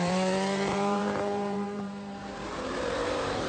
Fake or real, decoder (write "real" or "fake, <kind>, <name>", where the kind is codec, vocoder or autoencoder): fake, vocoder, BigVGAN v2